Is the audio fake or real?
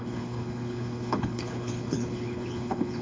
fake